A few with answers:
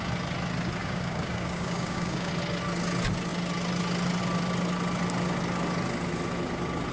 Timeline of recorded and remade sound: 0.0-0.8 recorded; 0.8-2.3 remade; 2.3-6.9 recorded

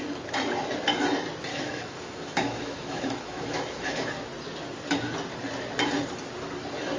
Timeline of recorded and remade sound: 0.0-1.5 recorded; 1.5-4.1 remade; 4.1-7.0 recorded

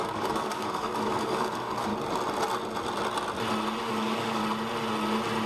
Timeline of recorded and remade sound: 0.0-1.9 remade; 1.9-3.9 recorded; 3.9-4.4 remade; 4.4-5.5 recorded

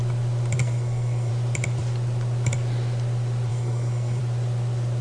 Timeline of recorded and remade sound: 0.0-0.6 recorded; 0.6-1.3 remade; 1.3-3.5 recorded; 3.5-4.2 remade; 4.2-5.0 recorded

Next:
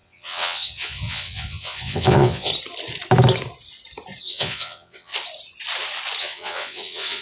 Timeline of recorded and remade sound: 0.0-2.5 remade; 2.5-4.2 recorded; 4.2-5.1 remade; 5.1-6.2 recorded; 6.2-7.2 remade

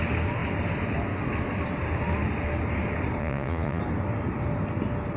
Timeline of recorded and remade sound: 0.0-3.2 recorded; 3.2-3.8 remade; 3.8-5.2 recorded

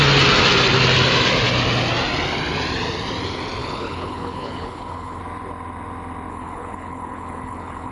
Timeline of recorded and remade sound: 0.0-3.6 recorded; 3.6-5.2 remade; 5.2-6.3 recorded; 6.3-7.9 remade